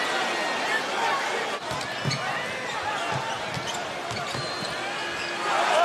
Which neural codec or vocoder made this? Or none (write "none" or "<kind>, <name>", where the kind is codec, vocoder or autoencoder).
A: none